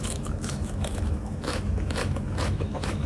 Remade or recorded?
remade